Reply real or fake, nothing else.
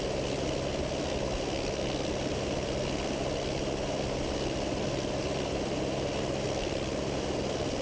real